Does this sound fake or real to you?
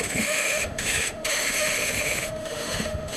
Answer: fake